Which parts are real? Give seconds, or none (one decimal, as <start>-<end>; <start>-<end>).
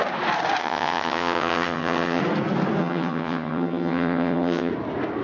0.0-0.6; 2.2-2.8; 4.7-5.2